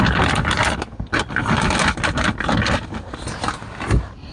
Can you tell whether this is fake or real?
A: real